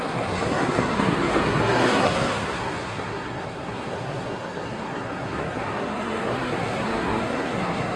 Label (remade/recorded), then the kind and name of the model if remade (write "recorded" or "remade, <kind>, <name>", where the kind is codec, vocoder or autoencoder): remade, codec, SNAC